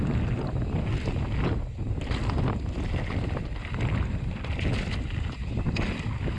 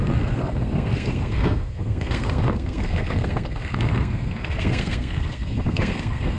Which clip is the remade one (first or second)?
second